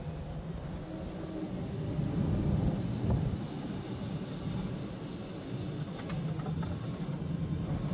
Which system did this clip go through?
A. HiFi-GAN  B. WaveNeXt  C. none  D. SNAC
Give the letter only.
C